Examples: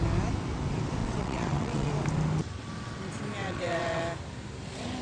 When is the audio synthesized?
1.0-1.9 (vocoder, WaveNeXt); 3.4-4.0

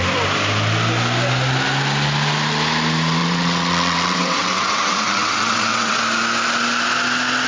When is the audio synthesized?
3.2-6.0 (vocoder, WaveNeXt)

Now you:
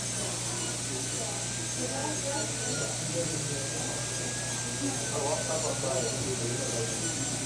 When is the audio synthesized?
none

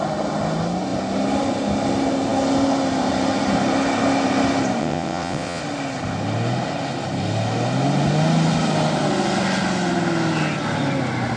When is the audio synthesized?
4.8-5.6 (vocoder, WaveNeXt)